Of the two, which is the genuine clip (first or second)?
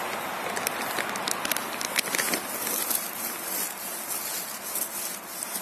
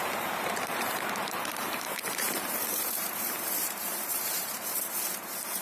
first